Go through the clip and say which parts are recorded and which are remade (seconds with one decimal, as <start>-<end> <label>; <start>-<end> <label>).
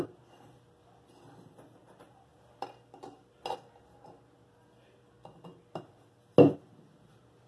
0.0-2.3 recorded; 2.3-3.3 remade; 3.3-7.5 recorded